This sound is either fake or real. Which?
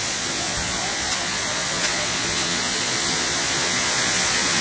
fake